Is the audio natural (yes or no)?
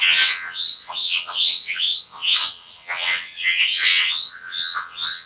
no